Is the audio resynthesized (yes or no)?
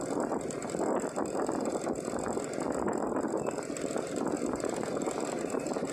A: no